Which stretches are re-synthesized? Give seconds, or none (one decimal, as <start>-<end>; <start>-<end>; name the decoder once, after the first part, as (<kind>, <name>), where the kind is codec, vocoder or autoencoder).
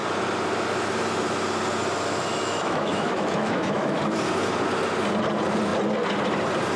2.3-4.0 (autoencoder, DAC-VAE)